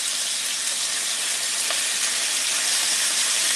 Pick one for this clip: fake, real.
real